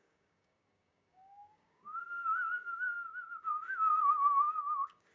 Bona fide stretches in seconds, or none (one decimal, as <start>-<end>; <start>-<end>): 2.9-4.4